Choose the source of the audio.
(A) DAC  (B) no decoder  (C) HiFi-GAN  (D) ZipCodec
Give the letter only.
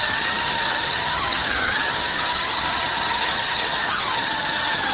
C